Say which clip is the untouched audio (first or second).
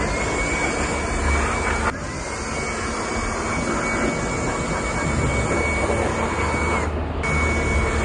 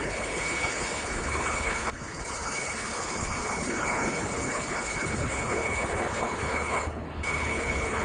first